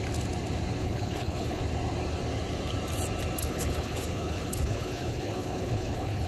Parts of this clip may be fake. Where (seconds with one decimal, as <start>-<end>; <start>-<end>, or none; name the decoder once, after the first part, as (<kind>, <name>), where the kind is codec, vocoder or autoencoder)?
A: 0.8-1.6 (codec, HILCodec); 3.4-6.3